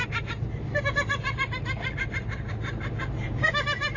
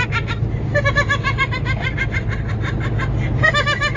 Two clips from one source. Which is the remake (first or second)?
first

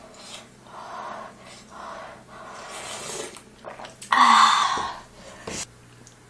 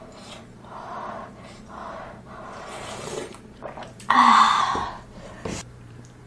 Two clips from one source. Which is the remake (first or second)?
second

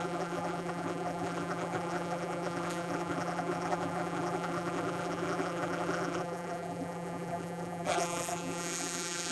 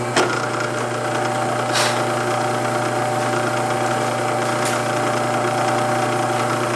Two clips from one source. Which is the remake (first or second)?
first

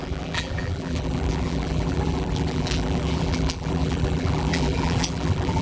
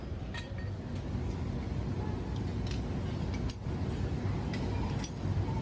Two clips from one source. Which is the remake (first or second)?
first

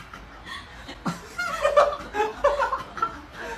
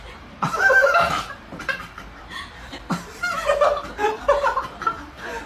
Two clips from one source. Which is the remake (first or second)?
second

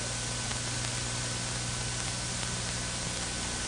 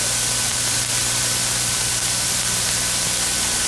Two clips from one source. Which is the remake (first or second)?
second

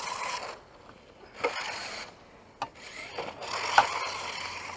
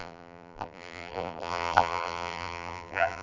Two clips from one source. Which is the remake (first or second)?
second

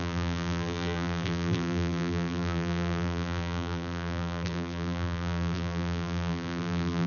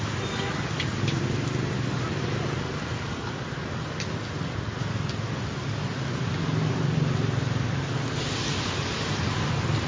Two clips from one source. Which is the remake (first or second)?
first